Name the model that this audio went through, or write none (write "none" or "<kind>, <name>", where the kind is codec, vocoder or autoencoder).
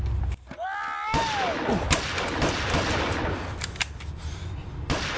none